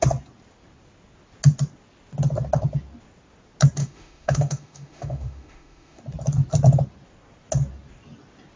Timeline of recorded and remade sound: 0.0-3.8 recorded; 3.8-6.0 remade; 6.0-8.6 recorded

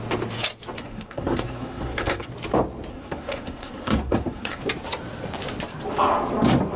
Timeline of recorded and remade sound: 0.0-0.8 recorded; 0.8-2.3 remade; 2.3-2.9 recorded; 2.9-4.6 remade; 4.6-6.8 recorded

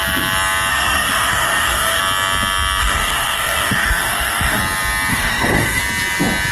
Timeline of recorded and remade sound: 0.0-0.7 recorded; 0.7-2.0 remade; 2.0-2.8 recorded; 2.8-4.6 remade; 4.6-5.1 recorded; 5.1-5.8 remade; 5.8-6.5 recorded

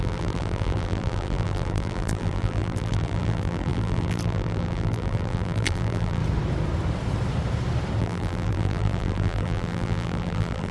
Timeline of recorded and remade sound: 0.0-6.2 remade; 6.2-8.0 recorded; 8.0-10.7 remade

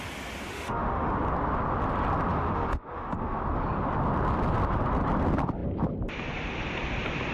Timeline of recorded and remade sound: 0.0-0.5 recorded; 0.5-1.1 remade; 1.1-2.3 recorded; 2.3-3.4 remade; 3.4-7.3 recorded

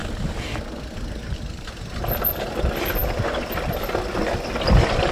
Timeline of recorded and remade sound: 0.0-5.1 recorded